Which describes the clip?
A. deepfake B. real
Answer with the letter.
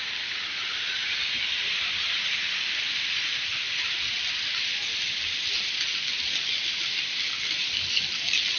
B